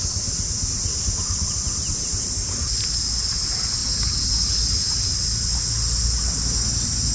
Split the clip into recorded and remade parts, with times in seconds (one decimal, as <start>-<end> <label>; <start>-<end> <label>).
0.0-7.1 recorded